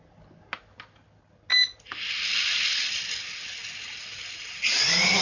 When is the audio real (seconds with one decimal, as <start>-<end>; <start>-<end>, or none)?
0.0-5.2